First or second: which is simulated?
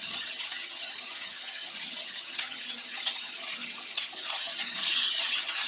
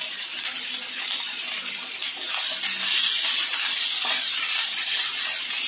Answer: first